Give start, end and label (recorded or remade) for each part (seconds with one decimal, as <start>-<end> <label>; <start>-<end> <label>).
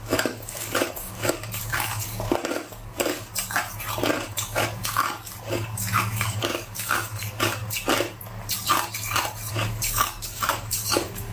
0.0-3.3 remade; 3.3-4.3 recorded; 4.3-7.6 remade; 7.6-9.5 recorded; 9.5-11.3 remade